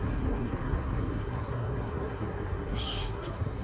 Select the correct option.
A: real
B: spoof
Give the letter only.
B